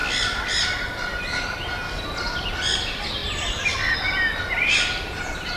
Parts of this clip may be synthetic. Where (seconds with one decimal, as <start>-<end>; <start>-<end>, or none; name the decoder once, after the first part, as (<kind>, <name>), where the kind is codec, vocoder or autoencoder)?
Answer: none